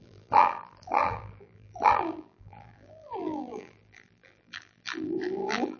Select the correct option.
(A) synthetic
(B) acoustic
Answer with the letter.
A